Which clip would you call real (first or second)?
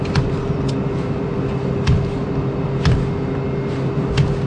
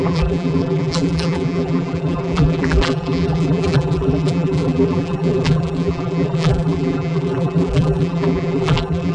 first